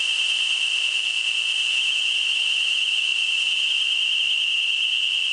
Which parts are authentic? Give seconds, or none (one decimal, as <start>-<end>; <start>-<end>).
0.0-5.3